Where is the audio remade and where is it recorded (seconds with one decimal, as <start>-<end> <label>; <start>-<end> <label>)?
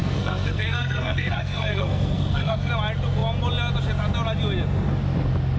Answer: 0.0-2.7 remade; 2.7-5.6 recorded